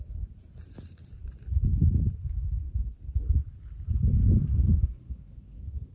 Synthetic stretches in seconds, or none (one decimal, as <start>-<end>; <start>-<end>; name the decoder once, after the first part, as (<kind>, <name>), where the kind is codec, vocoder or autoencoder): 4.4-5.9 (codec, SNAC)